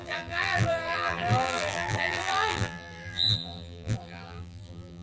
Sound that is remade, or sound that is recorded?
remade